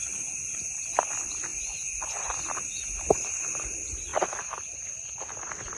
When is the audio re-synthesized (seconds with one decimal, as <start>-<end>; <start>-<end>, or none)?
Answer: 1.5-2.3